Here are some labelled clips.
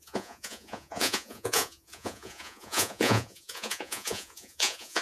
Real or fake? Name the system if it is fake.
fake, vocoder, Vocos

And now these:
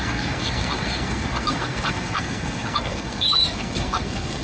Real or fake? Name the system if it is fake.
fake, codec, SNAC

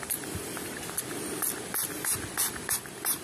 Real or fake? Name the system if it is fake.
real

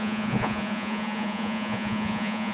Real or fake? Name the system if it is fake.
fake, vocoder, Vocos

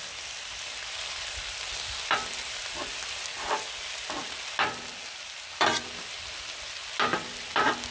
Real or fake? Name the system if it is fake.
real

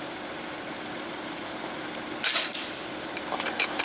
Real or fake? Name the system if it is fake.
real